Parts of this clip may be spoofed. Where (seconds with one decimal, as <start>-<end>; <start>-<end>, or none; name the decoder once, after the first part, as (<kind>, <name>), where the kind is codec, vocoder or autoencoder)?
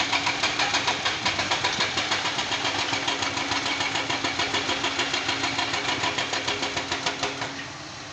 none